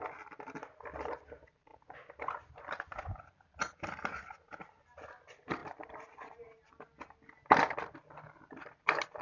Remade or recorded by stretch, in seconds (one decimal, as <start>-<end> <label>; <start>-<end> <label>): 0.0-9.2 recorded